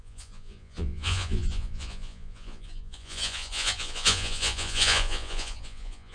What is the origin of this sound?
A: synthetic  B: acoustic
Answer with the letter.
A